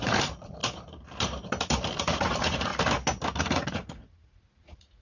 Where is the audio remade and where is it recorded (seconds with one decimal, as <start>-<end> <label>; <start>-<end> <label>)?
0.0-0.6 remade; 0.6-2.0 recorded; 2.0-2.7 remade; 2.7-3.4 recorded; 3.4-5.0 remade